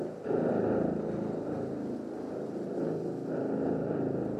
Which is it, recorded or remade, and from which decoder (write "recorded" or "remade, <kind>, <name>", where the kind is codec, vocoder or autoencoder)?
recorded